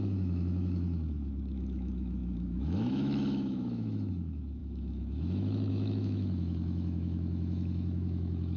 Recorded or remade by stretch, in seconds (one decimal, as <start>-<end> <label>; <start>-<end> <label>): 0.0-8.6 remade

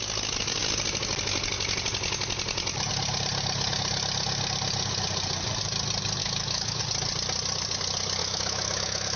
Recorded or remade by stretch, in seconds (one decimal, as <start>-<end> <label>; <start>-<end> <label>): 0.0-6.2 recorded; 6.2-6.8 remade; 6.8-8.2 recorded; 8.2-9.2 remade

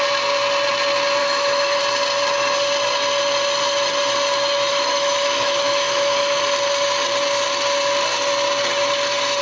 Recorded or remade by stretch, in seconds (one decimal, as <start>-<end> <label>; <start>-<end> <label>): 0.0-1.2 recorded; 1.2-1.8 remade; 1.8-4.7 recorded; 4.7-6.4 remade; 6.4-9.4 recorded

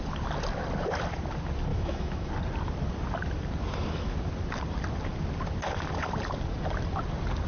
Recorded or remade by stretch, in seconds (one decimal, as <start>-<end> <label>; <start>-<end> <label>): 0.0-1.7 recorded; 1.7-2.3 remade; 2.3-7.5 recorded

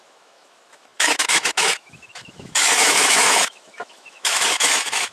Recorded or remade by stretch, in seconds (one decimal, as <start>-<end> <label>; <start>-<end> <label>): 0.0-5.1 remade

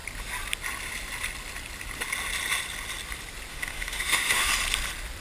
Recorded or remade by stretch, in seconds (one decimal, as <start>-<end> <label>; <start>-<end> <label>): 0.0-3.5 recorded; 3.5-4.5 remade; 4.5-5.2 recorded

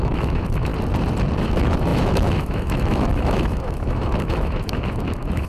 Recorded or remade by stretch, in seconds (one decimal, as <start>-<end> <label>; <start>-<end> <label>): 0.0-0.7 remade; 0.7-1.4 recorded; 1.4-5.5 remade

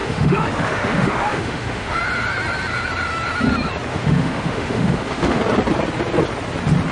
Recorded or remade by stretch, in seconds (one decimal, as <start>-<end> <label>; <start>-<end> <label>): 0.0-2.0 remade; 2.0-3.9 recorded; 3.9-5.4 remade; 5.4-6.9 recorded